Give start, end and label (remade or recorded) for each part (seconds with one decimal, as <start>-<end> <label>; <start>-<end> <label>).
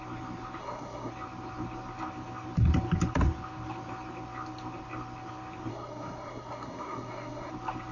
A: 0.0-0.6 recorded; 0.6-1.1 remade; 1.1-5.7 recorded; 5.7-7.5 remade; 7.5-7.9 recorded